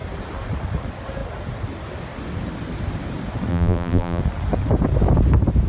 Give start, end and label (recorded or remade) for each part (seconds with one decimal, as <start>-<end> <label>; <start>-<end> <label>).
0.0-3.5 recorded; 3.5-4.2 remade; 4.2-5.7 recorded

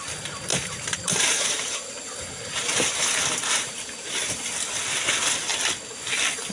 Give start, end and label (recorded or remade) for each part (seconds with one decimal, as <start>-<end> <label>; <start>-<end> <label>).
0.0-0.5 recorded; 0.5-4.4 remade; 4.4-6.5 recorded

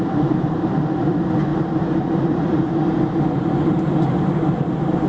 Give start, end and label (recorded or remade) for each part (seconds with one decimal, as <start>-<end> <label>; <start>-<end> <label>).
0.0-5.1 remade

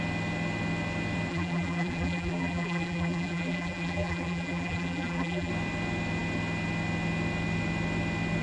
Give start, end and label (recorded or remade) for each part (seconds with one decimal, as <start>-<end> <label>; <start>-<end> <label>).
0.0-1.3 recorded; 1.3-5.5 remade; 5.5-8.4 recorded

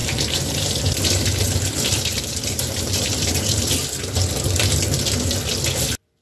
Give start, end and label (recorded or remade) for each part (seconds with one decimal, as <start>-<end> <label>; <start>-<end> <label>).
0.0-3.7 remade; 3.7-6.2 recorded

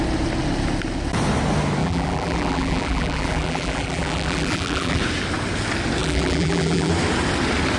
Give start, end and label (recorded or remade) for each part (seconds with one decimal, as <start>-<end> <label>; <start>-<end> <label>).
0.0-1.8 recorded; 1.8-5.0 remade; 5.0-6.0 recorded; 6.0-6.9 remade; 6.9-7.8 recorded

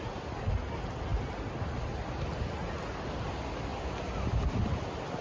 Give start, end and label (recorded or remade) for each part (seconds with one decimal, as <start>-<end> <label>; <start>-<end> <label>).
0.0-5.2 recorded

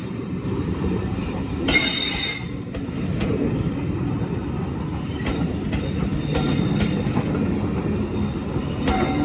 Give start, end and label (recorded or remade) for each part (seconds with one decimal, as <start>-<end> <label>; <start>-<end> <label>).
0.0-1.8 remade; 1.8-9.2 recorded